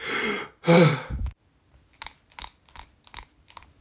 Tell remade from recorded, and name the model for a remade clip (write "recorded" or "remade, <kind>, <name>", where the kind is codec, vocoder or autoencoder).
recorded